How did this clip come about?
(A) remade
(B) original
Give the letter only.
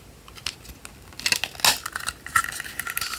B